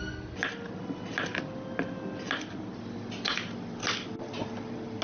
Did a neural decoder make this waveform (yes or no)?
no